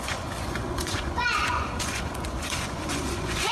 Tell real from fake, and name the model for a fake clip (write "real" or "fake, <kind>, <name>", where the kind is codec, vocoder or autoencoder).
fake, vocoder, Vocos